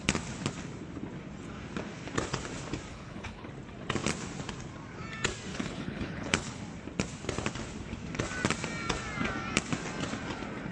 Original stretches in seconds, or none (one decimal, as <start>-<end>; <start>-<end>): 0.0-2.9; 3.5-5.5; 6.6-10.7